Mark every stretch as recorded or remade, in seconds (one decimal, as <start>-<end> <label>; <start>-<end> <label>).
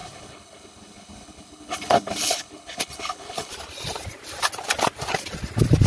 0.0-3.5 remade; 3.5-5.9 recorded